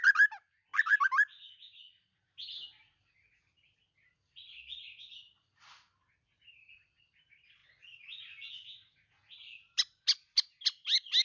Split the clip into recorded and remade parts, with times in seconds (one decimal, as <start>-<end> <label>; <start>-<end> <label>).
0.0-11.2 recorded